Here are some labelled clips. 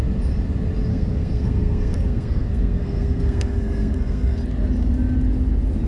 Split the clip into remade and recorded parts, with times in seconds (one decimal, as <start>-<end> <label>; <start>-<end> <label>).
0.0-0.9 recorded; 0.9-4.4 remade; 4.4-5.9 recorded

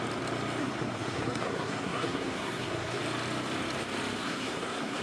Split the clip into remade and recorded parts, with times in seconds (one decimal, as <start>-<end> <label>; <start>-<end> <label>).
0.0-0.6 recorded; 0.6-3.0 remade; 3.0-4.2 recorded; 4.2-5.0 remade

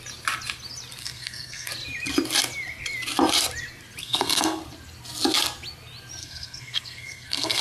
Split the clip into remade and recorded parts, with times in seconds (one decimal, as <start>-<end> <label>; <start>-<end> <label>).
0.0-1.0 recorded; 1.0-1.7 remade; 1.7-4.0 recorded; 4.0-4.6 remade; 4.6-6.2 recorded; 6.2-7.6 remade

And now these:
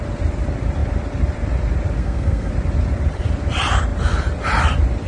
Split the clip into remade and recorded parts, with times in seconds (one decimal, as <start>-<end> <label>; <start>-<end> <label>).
0.0-2.0 recorded; 2.0-2.5 remade; 2.5-5.1 recorded